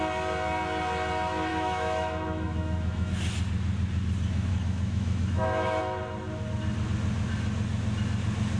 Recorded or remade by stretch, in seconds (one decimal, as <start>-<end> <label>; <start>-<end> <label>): 0.0-1.5 recorded; 1.5-3.1 remade; 3.1-4.5 recorded; 4.5-5.8 remade; 5.8-8.6 recorded